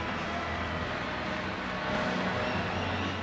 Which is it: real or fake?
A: real